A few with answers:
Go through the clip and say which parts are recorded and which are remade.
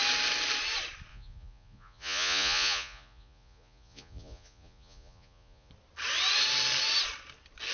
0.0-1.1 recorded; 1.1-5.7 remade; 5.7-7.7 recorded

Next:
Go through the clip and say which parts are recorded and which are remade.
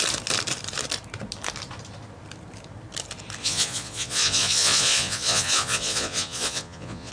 0.0-3.4 recorded; 3.4-7.1 remade